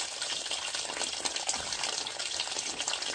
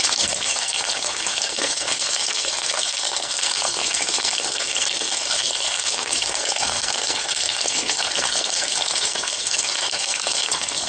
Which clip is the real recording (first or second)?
first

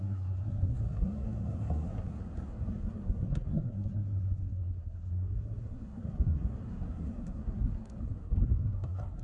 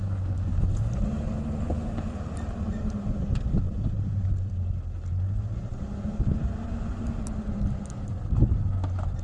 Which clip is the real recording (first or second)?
second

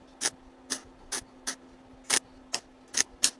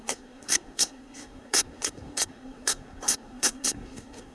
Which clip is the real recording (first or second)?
first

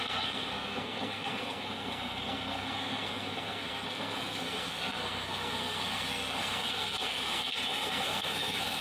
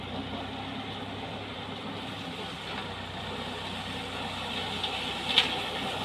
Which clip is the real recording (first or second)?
second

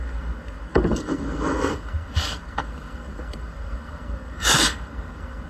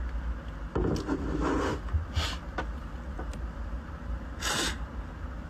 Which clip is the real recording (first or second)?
second